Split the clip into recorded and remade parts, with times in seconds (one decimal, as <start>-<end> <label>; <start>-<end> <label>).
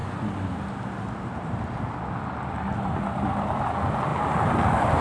0.0-5.0 recorded